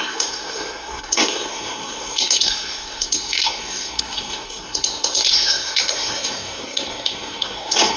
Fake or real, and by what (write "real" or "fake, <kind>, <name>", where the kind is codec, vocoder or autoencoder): fake, codec, SNAC